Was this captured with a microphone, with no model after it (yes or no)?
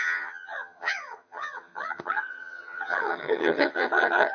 no